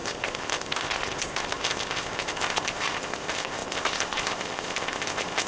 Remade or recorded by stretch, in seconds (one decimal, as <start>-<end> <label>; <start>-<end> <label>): 0.0-5.5 remade